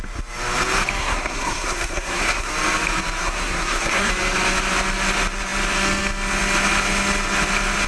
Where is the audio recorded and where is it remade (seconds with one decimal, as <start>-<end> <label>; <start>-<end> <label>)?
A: 0.0-1.0 recorded; 1.0-2.5 remade; 2.5-3.2 recorded; 3.2-4.1 remade; 4.1-7.9 recorded